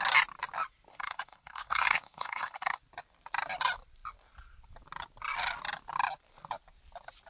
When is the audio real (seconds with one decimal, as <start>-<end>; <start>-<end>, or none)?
0.0-0.9; 2.8-7.3